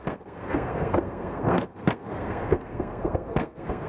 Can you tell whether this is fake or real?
fake